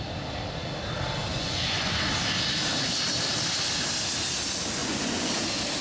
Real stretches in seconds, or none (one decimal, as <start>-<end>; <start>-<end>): 0.0-1.3; 1.9-4.8; 5.3-5.8